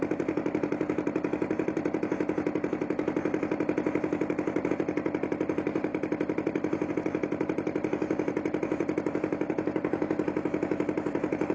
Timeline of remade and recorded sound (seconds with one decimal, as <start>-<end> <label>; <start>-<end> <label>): 0.0-11.5 remade